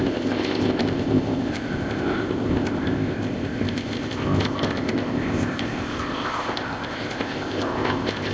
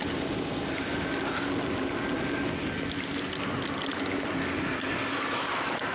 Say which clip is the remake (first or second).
first